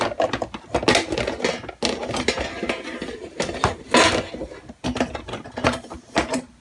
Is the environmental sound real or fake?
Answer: real